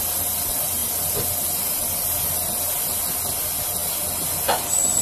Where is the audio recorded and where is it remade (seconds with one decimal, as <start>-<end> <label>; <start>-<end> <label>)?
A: 0.0-5.0 recorded